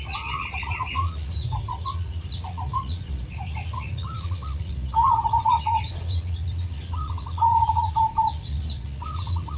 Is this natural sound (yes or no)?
no